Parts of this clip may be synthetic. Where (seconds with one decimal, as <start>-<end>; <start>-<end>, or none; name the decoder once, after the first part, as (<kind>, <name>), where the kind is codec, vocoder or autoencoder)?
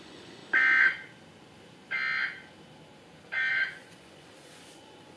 0.0-0.4 (vocoder, Vocos); 3.5-5.2